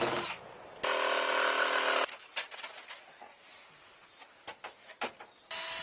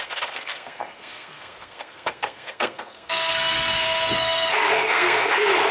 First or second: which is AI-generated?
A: second